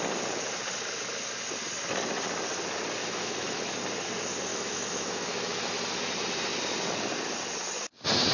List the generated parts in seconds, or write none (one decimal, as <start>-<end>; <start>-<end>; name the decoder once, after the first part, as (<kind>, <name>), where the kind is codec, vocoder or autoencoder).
3.0-3.7 (autoencoder, DAC-VAE); 4.5-5.7